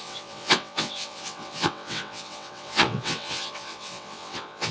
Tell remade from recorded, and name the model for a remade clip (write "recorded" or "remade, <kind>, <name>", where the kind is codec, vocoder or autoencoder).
remade, vocoder, WaveNeXt